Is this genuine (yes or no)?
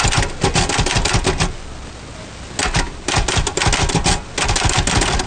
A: yes